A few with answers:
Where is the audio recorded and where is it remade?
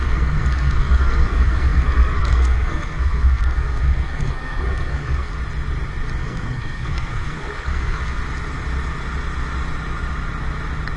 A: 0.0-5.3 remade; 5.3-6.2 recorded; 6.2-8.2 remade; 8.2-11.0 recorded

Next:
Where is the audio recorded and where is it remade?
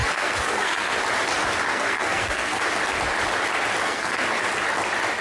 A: 0.0-0.9 remade; 0.9-1.7 recorded; 1.7-2.6 remade; 2.6-3.8 recorded; 3.8-4.3 remade; 4.3-5.2 recorded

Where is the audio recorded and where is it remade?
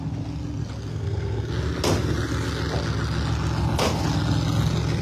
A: 0.0-0.9 recorded; 0.9-1.5 remade; 1.5-5.0 recorded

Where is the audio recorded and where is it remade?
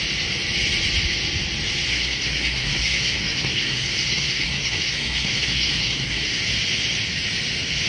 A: 0.0-1.9 recorded; 1.9-6.4 remade; 6.4-7.9 recorded